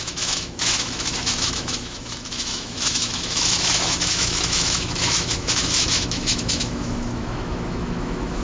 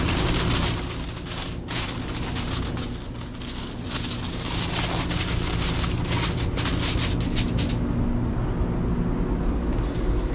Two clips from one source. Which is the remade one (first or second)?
first